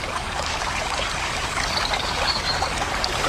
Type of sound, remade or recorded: remade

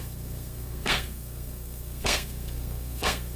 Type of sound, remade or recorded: remade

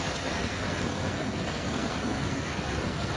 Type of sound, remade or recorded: remade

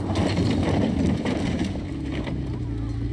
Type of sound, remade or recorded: recorded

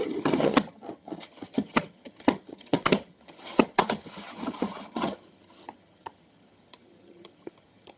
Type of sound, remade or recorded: remade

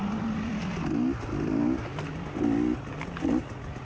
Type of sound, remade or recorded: recorded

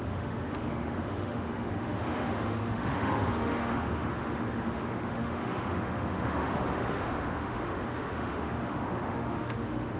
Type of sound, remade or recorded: remade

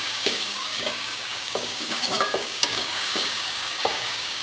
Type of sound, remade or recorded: remade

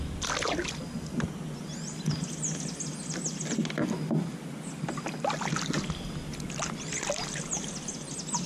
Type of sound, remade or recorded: recorded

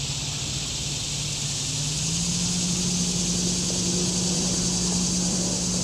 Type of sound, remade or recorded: remade